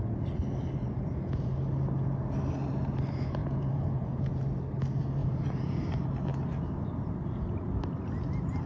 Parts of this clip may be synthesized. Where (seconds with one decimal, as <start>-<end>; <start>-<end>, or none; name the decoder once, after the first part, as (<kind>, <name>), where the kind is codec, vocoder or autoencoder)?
0.8-1.5 (vocoder, Vocos); 3.4-4.2; 5.2-5.8